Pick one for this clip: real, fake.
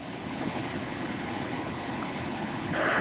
fake